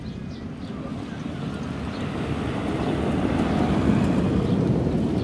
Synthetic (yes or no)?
no